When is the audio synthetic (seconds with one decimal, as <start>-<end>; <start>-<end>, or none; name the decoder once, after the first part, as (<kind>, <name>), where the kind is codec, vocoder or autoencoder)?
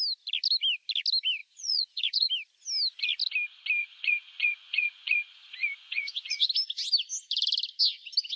1.4-2.3 (vocoder, Vocos); 3.8-6.5